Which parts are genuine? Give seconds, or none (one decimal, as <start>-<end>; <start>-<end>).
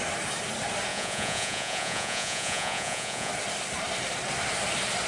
0.0-0.9; 3.3-5.1